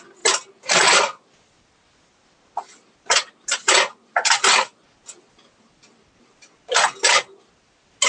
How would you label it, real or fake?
real